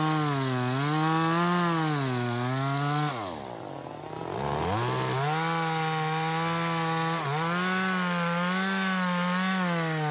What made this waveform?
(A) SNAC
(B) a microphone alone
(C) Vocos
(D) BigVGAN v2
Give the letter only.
B